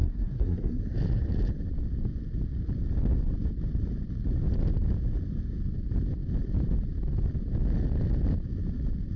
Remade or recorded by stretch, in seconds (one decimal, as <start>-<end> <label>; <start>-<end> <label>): 0.0-0.8 remade; 0.8-9.2 recorded